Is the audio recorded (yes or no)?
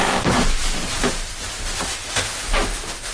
no